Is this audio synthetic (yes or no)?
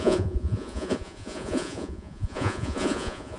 yes